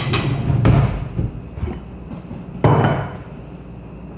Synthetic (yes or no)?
no